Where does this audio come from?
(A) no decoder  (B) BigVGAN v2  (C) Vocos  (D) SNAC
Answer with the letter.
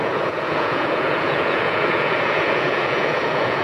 C